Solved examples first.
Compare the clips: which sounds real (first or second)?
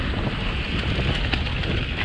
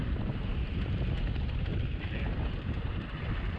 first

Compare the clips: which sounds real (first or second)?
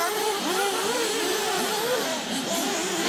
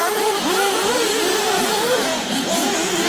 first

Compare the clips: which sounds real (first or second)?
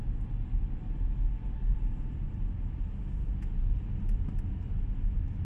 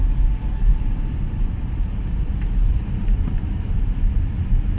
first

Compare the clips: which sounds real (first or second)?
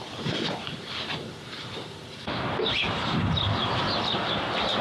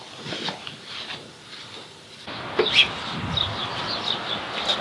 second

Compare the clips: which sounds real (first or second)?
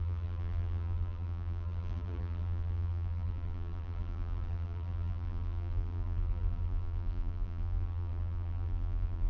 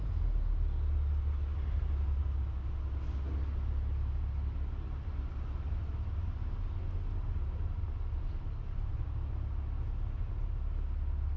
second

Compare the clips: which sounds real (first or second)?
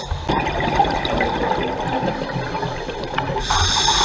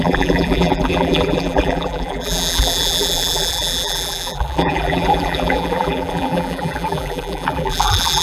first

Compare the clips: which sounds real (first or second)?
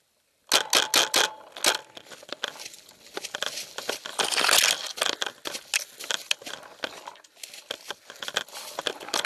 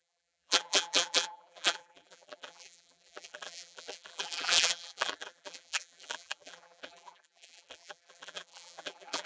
first